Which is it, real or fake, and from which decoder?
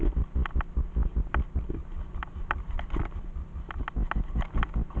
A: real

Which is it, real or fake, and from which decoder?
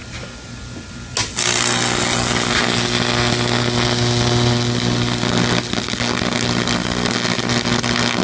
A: real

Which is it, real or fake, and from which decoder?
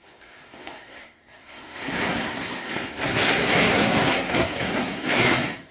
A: fake, codec, SNAC